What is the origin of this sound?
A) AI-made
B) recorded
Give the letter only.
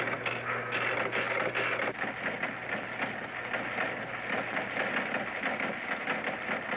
B